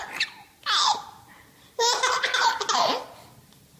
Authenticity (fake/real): real